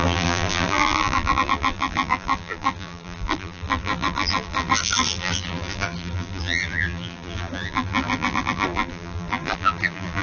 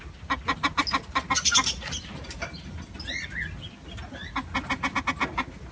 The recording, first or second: second